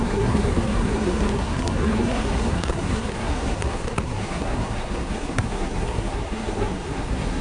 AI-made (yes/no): yes